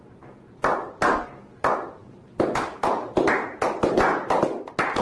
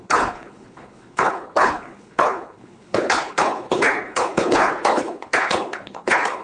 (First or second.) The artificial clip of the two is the second